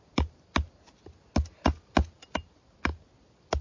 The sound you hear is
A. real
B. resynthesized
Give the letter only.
A